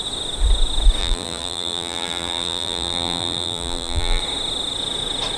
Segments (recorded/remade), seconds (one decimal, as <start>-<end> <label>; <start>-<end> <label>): 0.0-1.0 recorded; 1.0-4.2 remade; 4.2-5.4 recorded